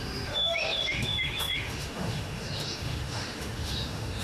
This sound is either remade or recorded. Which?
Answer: remade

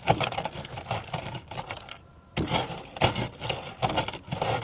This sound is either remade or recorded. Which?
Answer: recorded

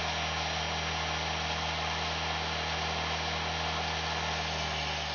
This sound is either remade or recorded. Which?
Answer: recorded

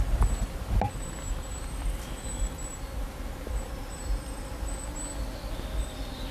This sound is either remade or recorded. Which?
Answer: recorded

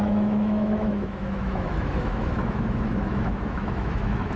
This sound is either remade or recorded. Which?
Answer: remade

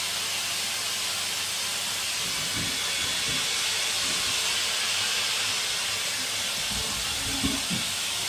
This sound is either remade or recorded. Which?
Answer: recorded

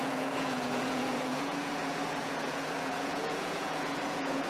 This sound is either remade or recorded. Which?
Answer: remade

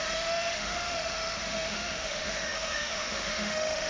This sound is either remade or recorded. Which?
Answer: remade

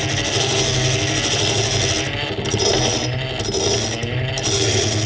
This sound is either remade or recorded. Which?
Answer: recorded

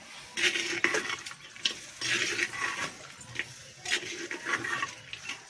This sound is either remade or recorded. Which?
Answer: recorded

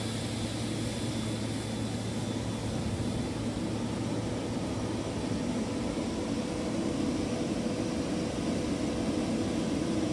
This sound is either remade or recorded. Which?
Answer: recorded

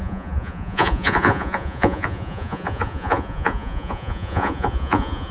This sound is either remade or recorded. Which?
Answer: remade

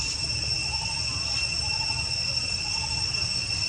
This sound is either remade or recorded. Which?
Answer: recorded